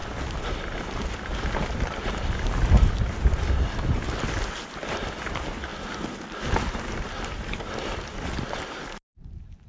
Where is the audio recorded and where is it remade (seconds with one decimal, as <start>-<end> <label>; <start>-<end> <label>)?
0.0-9.7 recorded